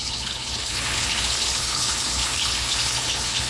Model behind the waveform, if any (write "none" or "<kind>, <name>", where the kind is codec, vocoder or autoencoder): codec, HILCodec